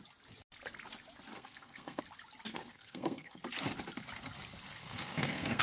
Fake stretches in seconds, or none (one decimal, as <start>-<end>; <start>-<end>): 1.3-2.0; 2.5-3.4; 4.8-5.6